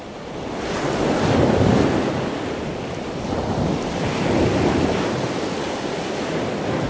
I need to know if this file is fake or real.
real